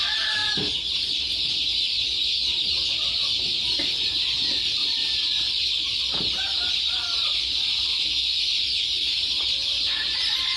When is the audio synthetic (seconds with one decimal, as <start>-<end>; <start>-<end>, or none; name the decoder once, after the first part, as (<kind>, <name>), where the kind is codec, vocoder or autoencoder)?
0.0-4.8 (vocoder, BigVGAN v2); 6.7-10.6